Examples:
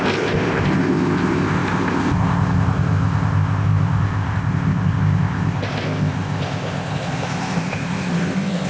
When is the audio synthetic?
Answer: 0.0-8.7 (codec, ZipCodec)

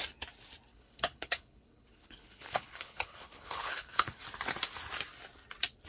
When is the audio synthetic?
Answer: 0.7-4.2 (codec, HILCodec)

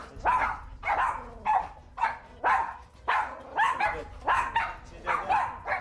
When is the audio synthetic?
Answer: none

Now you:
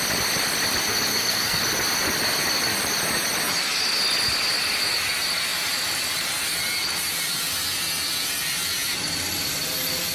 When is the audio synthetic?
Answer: 1.1-1.6 (codec, SNAC)

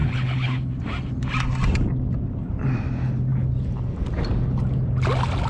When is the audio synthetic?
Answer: 0.0-0.7 (codec, HILCodec)

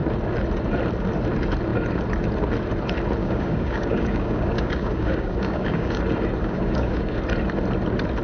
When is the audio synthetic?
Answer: 3.2-6.0 (codec, DAC); 6.4-7.2